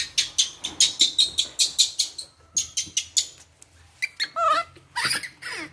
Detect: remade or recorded recorded